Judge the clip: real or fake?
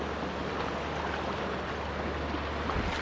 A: real